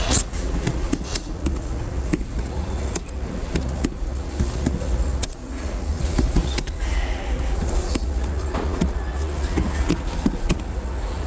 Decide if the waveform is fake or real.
fake